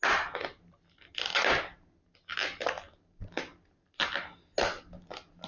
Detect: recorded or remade recorded